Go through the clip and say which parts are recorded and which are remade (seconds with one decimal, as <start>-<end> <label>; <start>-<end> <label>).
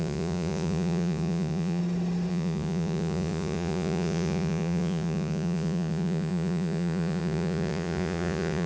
0.0-1.8 remade; 1.8-2.3 recorded; 2.3-8.7 remade